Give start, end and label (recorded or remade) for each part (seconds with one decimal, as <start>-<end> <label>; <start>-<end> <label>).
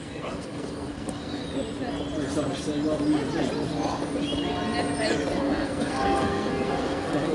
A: 0.0-1.4 remade; 1.4-5.4 recorded; 5.4-7.3 remade